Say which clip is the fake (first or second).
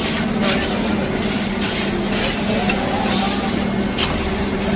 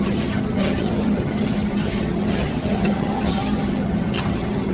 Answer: second